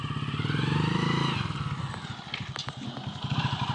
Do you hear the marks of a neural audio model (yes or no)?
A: no